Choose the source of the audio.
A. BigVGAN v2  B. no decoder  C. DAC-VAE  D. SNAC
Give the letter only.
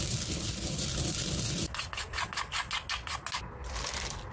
B